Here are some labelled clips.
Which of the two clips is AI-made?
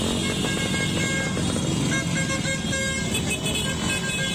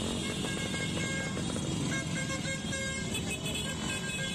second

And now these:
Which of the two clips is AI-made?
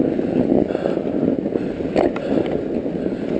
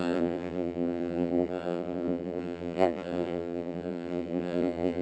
second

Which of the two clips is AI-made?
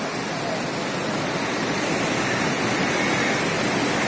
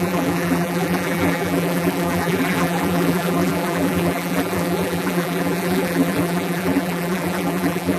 second